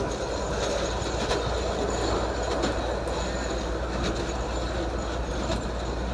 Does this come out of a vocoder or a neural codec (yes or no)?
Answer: no